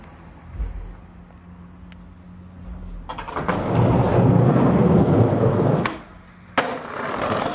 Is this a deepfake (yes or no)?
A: no